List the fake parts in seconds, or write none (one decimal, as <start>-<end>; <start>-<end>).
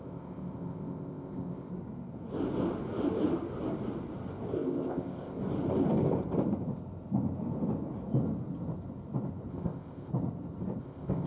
0.0-1.7; 4.5-5.4; 9.5-10.1; 10.8-11.3